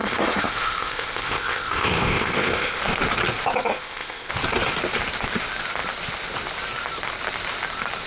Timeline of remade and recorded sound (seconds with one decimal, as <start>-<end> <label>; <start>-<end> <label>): 0.0-2.8 remade; 2.8-3.7 recorded; 3.7-4.3 remade; 4.3-8.1 recorded